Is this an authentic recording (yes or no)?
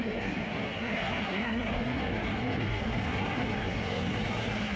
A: no